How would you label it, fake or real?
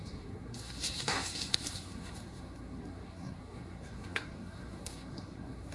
fake